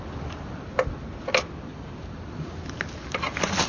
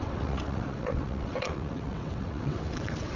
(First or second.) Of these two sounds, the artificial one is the second